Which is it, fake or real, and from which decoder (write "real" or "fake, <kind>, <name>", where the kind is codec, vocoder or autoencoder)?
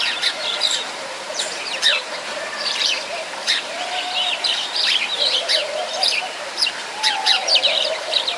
fake, vocoder, BigVGAN v2